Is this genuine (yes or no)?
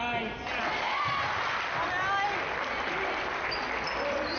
yes